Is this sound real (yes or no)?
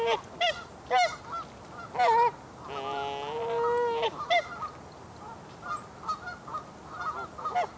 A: yes